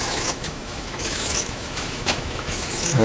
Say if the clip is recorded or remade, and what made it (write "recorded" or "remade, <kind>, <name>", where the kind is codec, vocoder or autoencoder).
remade, autoencoder, DAC-VAE